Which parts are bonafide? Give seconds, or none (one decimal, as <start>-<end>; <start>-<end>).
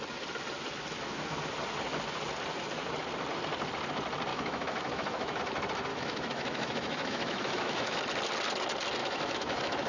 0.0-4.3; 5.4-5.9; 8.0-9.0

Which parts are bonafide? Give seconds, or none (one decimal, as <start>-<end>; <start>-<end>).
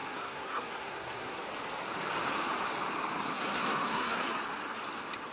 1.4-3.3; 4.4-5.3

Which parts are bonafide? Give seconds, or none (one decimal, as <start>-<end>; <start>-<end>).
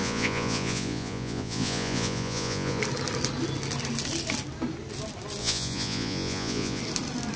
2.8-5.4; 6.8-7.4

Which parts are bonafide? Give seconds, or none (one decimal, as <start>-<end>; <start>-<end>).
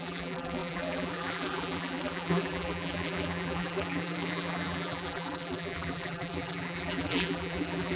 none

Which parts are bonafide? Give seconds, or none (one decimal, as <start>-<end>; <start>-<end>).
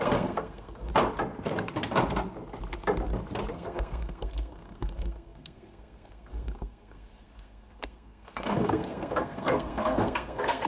0.9-3.5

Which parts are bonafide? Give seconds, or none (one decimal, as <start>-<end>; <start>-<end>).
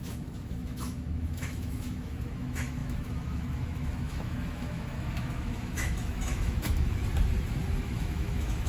7.0-7.8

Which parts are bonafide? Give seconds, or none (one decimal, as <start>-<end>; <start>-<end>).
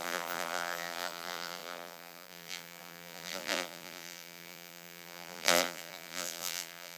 none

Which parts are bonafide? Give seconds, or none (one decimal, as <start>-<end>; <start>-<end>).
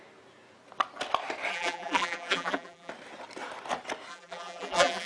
0.0-1.5; 2.9-4.1